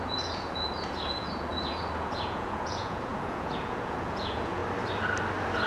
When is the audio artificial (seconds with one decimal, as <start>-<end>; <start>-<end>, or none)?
0.0-4.6

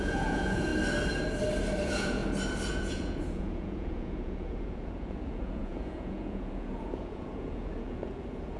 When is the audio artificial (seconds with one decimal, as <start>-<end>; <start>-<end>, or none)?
0.0-0.7; 1.8-2.2; 2.7-8.6

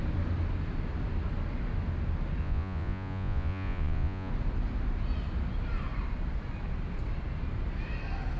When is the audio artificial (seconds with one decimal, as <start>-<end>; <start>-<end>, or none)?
2.4-4.3

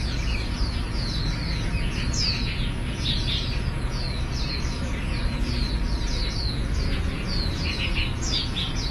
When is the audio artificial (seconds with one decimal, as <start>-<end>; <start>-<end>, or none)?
0.0-8.9

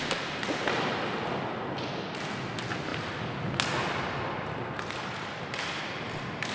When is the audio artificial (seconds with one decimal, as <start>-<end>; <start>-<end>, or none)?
none